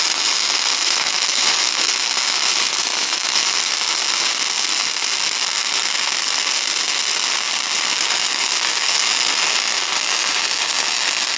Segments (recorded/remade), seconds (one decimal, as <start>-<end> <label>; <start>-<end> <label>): 0.0-0.8 recorded; 0.8-1.9 remade; 1.9-2.9 recorded; 2.9-3.6 remade; 3.6-11.4 recorded